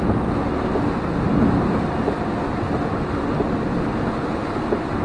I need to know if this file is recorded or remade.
recorded